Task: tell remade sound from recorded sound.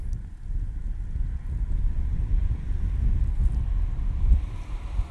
recorded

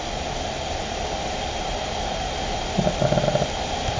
recorded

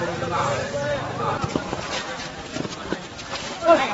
remade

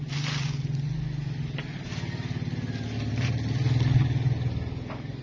recorded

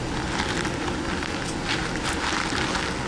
recorded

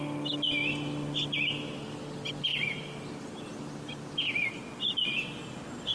recorded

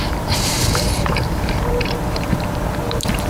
remade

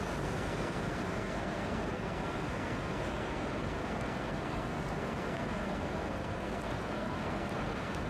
remade